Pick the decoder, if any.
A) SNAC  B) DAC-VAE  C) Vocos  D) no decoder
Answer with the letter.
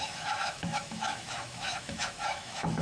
B